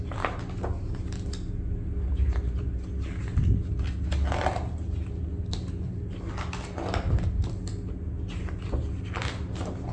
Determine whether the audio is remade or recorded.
recorded